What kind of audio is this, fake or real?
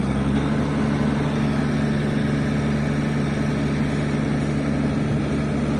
real